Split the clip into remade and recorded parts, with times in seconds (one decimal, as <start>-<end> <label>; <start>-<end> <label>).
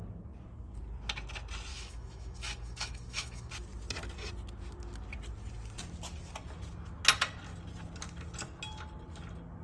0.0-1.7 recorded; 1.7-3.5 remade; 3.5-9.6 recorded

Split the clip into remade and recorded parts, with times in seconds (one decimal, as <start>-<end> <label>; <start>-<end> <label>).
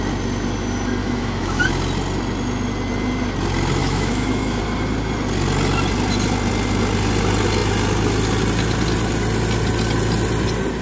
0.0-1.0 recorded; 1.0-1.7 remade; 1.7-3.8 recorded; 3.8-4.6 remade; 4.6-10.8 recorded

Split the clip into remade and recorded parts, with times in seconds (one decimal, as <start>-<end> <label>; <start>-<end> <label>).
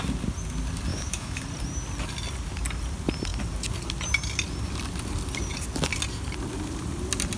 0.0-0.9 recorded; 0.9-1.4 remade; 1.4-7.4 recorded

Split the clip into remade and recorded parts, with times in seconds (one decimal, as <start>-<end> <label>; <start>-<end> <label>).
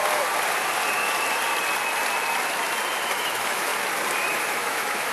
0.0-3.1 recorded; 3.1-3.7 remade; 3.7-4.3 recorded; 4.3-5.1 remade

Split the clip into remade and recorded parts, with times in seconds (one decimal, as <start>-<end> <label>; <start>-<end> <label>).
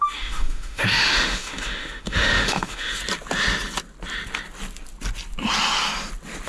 0.0-3.0 remade; 3.0-6.5 recorded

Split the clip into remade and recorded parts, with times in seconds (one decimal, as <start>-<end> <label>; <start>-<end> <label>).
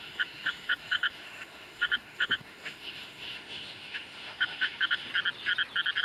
0.0-5.1 remade; 5.1-6.0 recorded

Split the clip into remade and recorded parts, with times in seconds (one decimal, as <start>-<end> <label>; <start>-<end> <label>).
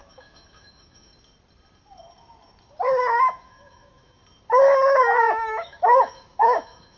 0.0-1.1 remade; 1.1-3.3 recorded; 3.3-4.2 remade; 4.2-5.2 recorded; 5.2-7.0 remade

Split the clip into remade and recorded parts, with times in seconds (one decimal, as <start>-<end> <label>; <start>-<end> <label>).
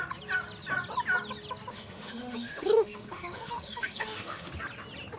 0.0-1.7 recorded; 1.7-4.5 remade; 4.5-5.2 recorded